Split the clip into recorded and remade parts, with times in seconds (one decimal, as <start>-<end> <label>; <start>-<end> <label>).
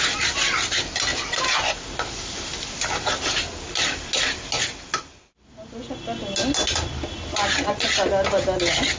0.0-9.0 recorded